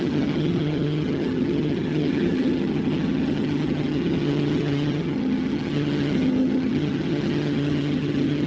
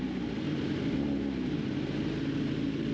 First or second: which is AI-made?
first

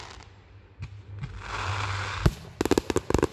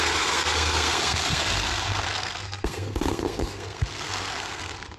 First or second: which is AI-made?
second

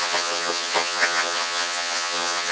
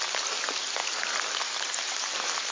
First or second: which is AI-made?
first